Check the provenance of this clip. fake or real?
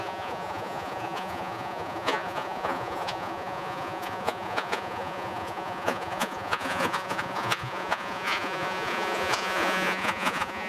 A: fake